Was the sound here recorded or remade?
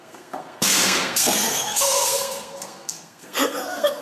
remade